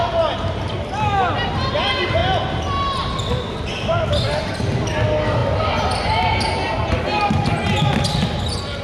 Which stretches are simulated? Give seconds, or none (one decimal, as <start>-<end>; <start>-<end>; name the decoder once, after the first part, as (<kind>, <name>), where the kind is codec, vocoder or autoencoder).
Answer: none